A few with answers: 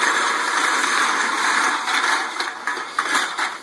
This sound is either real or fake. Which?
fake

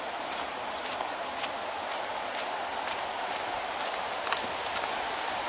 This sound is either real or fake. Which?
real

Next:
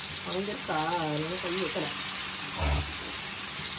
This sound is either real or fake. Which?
real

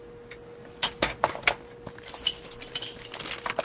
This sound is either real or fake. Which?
real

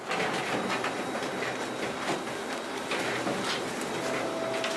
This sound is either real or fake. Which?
real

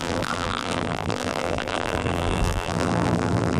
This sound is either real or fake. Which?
fake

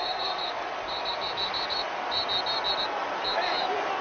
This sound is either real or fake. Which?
real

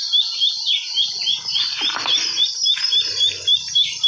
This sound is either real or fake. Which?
real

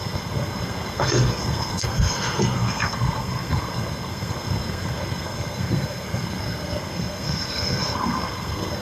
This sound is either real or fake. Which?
fake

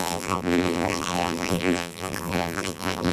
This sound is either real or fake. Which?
fake